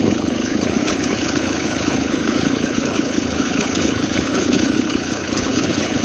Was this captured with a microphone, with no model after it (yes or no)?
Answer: no